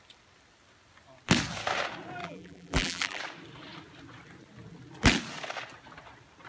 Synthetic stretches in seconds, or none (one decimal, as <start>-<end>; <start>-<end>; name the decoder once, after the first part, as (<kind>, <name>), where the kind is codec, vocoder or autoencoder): 2.2-3.2 (vocoder, BigVGAN v2)